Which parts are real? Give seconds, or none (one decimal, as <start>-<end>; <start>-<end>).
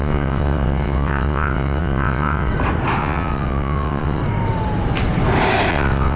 2.5-3.0; 4.2-5.7